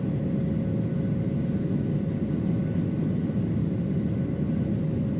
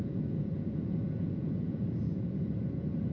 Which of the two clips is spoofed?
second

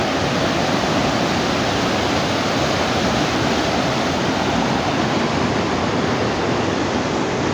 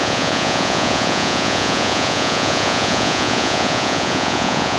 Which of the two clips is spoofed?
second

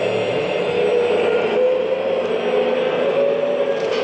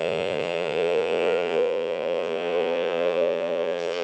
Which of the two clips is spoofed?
second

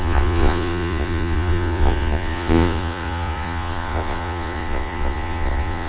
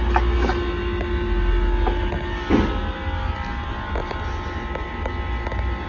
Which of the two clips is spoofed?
first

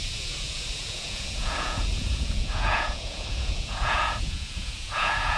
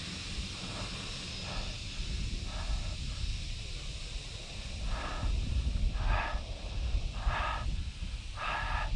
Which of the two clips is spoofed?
first